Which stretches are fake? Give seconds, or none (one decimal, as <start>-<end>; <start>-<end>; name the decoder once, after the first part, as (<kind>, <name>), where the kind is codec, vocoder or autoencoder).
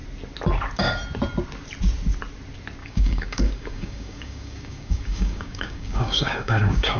2.8-7.0 (codec, DAC)